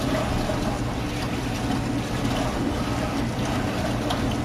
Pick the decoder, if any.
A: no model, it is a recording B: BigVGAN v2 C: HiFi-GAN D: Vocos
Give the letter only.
A